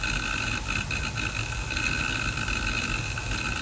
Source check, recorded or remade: recorded